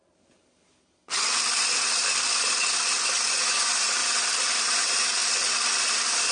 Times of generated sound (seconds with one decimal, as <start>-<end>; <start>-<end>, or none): 3.6-4.0; 4.6-5.2; 5.8-6.3

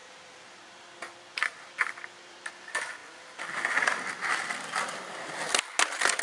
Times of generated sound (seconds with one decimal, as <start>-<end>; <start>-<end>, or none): 0.0-2.5; 3.0-5.2

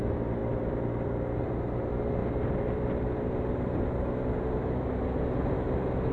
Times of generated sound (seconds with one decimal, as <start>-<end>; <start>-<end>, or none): 0.4-1.4; 2.2-3.8

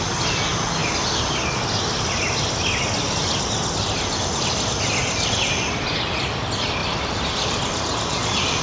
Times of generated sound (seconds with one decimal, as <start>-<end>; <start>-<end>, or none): 6.8-8.6

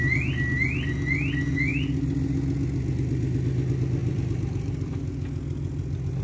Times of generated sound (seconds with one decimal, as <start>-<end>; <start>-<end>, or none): 4.0-5.0

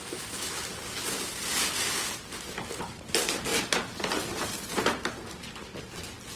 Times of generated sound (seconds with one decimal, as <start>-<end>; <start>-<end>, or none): 1.5-2.8; 3.5-5.8

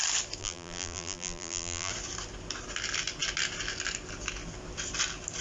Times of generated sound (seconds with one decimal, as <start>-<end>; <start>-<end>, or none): 0.4-1.9